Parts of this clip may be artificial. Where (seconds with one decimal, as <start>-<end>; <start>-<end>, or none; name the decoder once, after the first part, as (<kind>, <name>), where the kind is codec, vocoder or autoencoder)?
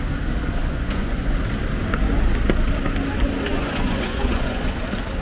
0.6-1.4 (vocoder, Vocos); 3.5-4.6